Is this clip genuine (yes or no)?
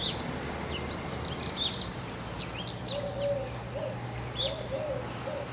yes